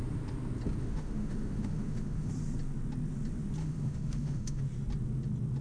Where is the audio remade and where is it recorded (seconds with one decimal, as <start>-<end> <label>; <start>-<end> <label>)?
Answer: 0.0-0.8 recorded; 0.8-2.3 remade; 2.3-3.6 recorded; 3.6-4.6 remade; 4.6-5.6 recorded